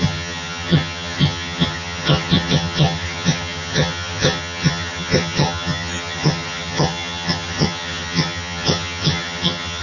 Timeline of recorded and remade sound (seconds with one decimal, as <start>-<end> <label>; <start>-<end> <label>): 0.0-9.8 remade